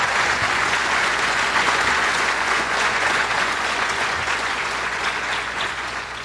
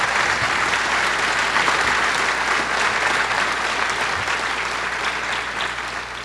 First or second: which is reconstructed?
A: first